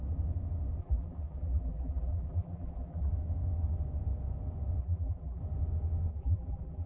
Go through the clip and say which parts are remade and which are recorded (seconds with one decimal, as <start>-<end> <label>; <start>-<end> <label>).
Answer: 0.0-0.8 recorded; 0.8-3.1 remade; 3.1-4.8 recorded; 4.8-5.4 remade; 5.4-6.1 recorded; 6.1-6.9 remade